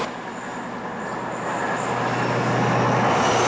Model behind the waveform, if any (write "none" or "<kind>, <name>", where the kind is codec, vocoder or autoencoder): none